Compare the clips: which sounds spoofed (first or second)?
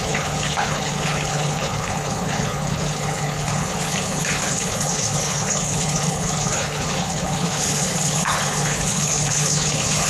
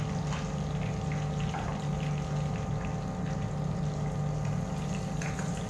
first